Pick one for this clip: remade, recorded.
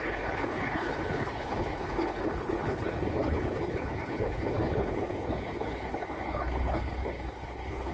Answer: remade